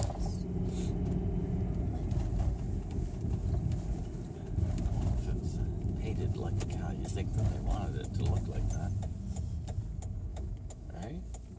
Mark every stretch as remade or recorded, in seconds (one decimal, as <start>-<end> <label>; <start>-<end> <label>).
0.0-10.3 recorded; 10.3-11.2 remade; 11.2-11.6 recorded